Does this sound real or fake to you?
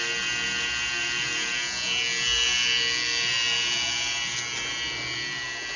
real